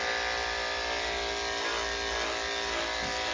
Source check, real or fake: real